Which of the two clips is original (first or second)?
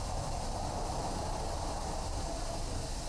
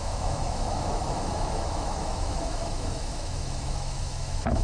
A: first